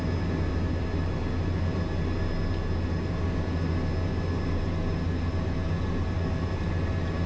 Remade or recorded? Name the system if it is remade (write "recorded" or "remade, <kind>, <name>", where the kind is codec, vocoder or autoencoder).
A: recorded